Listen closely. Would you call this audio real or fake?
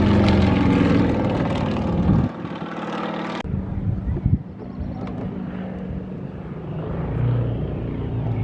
real